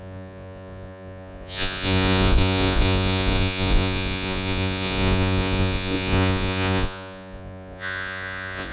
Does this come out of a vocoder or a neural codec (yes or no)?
yes